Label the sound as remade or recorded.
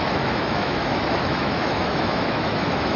remade